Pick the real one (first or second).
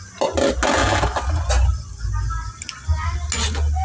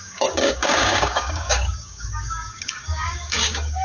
first